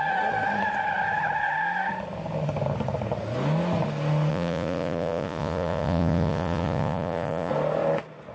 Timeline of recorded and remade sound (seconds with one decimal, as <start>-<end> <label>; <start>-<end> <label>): 0.0-4.3 recorded; 4.3-7.5 remade; 7.5-8.3 recorded